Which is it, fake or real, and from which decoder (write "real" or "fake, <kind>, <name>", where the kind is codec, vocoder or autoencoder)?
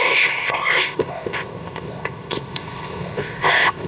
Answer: fake, codec, ZipCodec